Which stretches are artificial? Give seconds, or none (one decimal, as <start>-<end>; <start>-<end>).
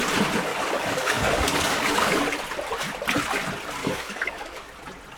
0.5-2.2; 3.8-4.7